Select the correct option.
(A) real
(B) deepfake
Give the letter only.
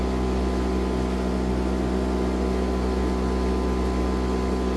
A